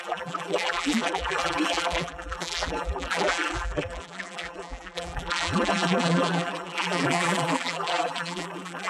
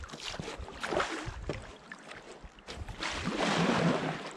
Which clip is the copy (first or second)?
first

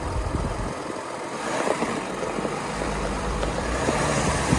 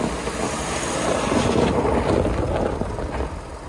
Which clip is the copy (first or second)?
first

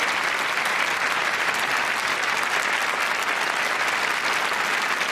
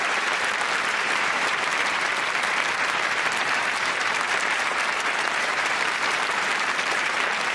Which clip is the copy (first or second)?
second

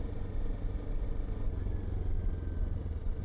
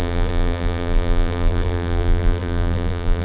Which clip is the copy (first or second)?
second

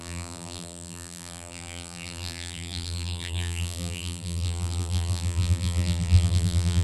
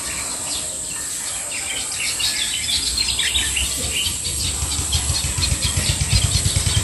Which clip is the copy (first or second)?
first